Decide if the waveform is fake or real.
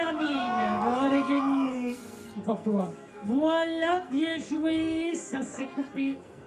fake